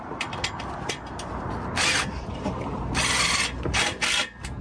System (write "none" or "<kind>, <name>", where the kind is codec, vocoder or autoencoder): none